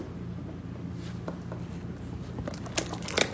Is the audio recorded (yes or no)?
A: yes